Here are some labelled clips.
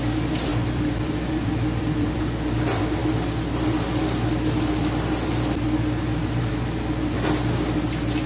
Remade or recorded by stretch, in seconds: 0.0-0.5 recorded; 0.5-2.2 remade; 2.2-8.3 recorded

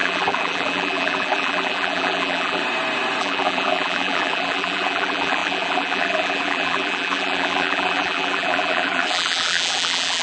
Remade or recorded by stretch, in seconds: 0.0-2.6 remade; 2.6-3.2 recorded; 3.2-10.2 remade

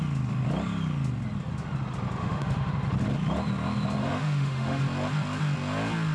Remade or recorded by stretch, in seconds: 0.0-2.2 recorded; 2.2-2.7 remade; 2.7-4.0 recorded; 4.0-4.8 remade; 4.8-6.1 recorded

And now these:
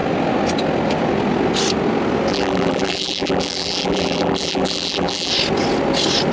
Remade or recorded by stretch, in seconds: 0.0-2.3 recorded; 2.3-5.3 remade; 5.3-6.3 recorded